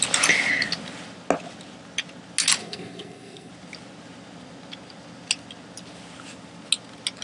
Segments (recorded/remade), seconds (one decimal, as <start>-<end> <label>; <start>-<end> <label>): 0.0-2.6 recorded; 2.6-3.5 remade; 3.5-7.2 recorded